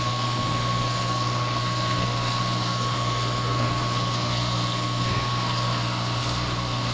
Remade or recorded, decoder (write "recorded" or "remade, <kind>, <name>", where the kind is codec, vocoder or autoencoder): remade, codec, SNAC